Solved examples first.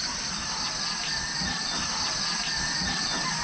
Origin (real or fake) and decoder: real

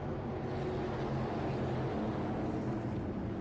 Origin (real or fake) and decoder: real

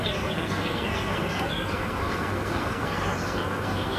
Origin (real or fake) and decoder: fake, codec, SNAC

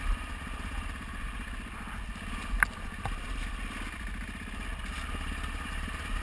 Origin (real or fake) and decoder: real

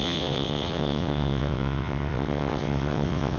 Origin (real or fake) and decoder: fake, vocoder, WaveNeXt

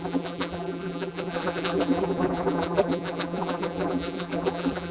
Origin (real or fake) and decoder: fake, vocoder, BigVGAN v2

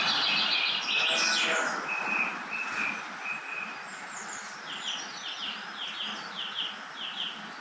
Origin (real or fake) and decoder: real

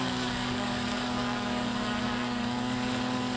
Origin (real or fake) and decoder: fake, codec, DAC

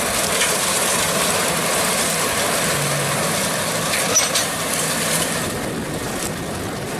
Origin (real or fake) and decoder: real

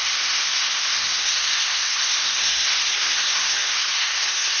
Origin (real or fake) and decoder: fake, codec, SNAC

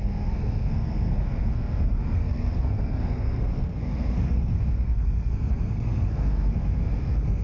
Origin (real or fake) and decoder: fake, codec, SNAC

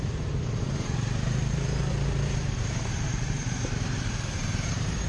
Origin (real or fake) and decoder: fake, vocoder, BigVGAN v2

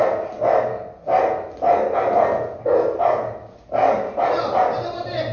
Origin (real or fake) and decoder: real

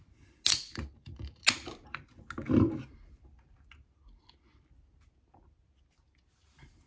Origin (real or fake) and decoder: real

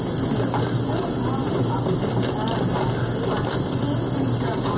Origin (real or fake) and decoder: real